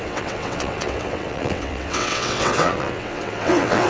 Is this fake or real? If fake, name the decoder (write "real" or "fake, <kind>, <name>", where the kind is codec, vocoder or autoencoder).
fake, vocoder, WaveNeXt